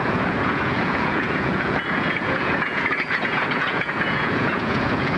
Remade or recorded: remade